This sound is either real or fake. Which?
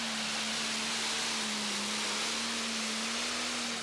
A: real